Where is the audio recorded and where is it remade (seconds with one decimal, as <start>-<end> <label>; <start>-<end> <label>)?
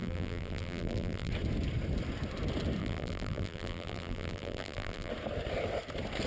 0.0-1.3 remade; 1.3-2.8 recorded; 2.8-5.1 remade; 5.1-6.3 recorded